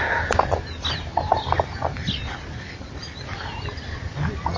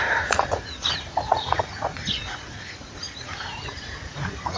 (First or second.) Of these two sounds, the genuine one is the first